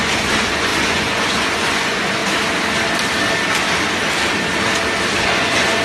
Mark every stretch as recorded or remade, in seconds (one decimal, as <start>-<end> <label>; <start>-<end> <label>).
0.0-2.2 remade; 2.2-5.2 recorded; 5.2-5.8 remade